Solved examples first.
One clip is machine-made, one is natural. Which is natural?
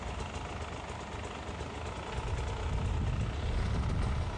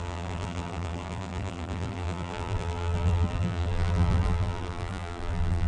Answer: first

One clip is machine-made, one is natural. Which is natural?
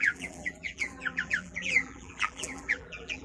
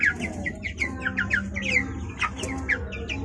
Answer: second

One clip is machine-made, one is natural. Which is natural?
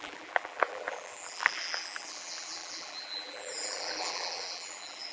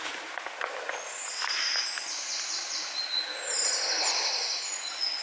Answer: second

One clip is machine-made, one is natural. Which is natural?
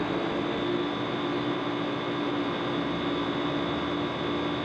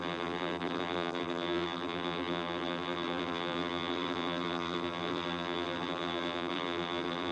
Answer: first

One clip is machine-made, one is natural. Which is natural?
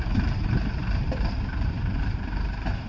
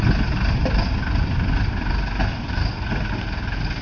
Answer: second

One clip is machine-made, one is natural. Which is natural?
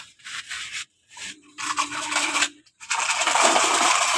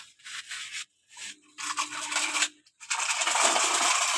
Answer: second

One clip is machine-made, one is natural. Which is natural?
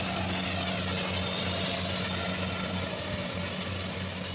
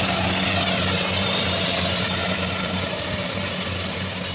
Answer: first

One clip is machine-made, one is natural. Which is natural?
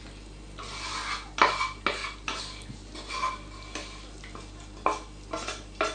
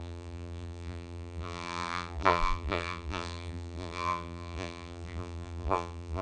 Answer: first